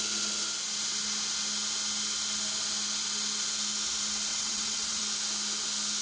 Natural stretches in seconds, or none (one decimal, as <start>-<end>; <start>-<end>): 0.0-4.3; 5.0-6.0